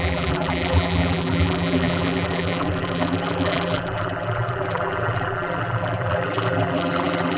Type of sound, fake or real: fake